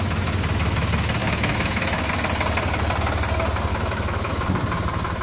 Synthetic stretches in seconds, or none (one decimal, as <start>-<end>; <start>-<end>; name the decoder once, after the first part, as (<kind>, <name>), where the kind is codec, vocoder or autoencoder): 1.2-2.1 (autoencoder, DAC-VAE); 3.7-4.5